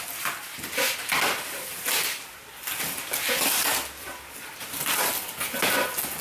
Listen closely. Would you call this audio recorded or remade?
recorded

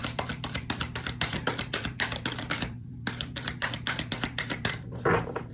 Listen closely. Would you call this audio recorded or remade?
remade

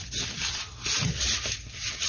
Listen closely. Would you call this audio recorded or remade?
recorded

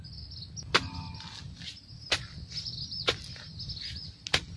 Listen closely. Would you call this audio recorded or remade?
recorded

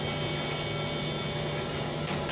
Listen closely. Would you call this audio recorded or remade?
recorded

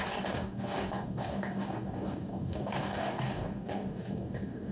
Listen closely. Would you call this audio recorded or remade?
remade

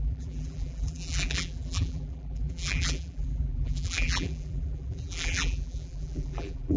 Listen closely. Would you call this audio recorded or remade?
remade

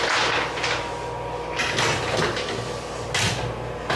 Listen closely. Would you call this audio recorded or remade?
recorded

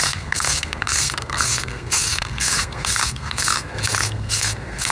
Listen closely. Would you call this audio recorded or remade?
remade